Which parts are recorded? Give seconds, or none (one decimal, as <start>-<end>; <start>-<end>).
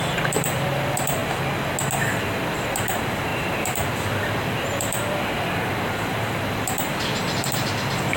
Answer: 1.2-2.2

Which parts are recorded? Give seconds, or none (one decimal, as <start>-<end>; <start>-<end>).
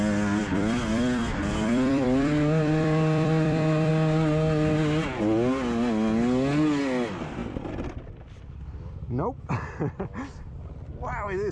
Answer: 0.0-0.4; 3.9-7.4; 8.9-11.5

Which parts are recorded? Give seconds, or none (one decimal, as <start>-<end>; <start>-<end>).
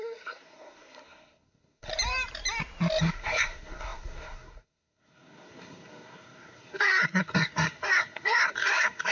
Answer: 1.9-3.0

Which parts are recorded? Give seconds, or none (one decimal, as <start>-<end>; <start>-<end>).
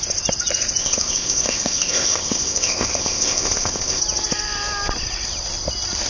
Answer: 0.0-0.8; 4.0-6.1